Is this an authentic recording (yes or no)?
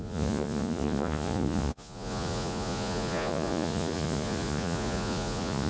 no